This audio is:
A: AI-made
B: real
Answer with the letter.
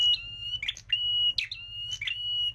B